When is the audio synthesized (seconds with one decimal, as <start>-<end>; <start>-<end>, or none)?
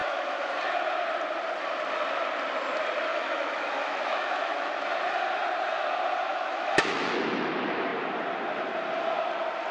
0.0-0.5; 3.1-4.7; 6.3-7.5